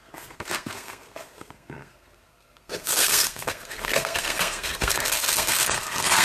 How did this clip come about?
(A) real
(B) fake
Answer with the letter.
B